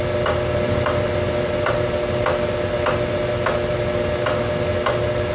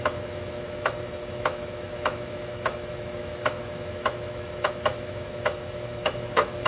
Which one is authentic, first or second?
first